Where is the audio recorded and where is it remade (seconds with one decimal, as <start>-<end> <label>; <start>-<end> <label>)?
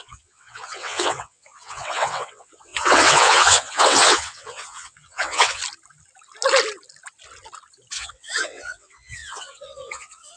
0.0-5.6 remade; 5.6-7.9 recorded; 7.9-10.4 remade